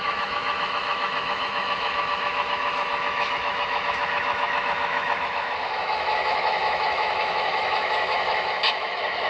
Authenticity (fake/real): fake